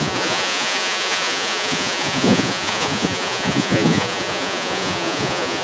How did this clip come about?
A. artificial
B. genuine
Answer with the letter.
A